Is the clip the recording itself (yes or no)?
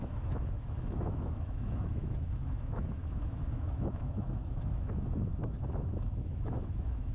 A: no